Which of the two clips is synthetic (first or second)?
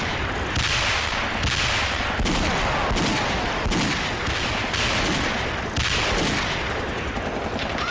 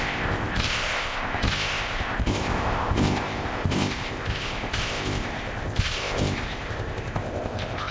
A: second